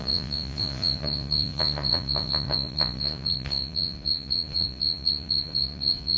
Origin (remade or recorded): remade